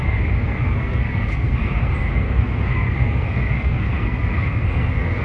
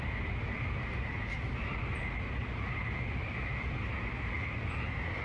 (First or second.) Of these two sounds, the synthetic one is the first